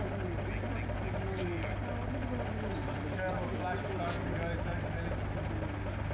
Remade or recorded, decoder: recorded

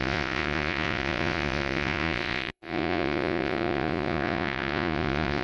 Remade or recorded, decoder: remade, vocoder, Vocos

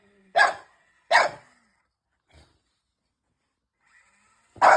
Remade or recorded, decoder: recorded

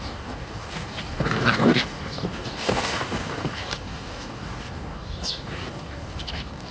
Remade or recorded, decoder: remade, codec, DAC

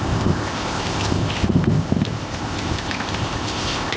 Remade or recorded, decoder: remade, codec, ZipCodec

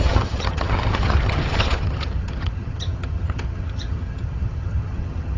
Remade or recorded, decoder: remade, vocoder, HiFi-GAN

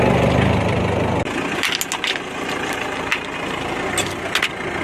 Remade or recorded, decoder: recorded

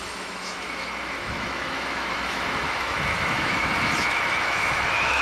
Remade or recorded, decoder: remade, autoencoder, DAC-VAE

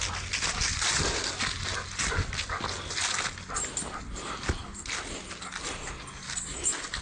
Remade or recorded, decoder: recorded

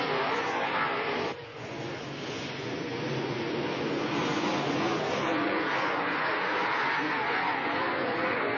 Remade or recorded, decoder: remade, vocoder, Vocos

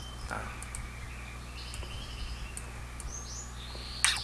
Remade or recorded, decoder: recorded